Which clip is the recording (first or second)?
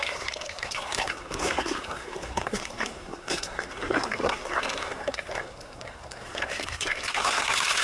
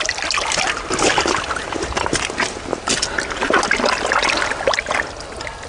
second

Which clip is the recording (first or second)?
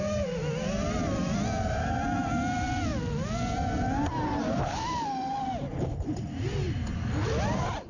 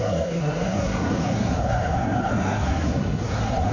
first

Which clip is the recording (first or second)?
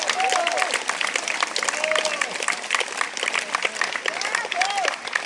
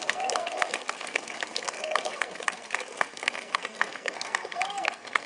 first